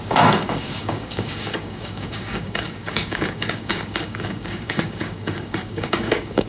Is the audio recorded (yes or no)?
no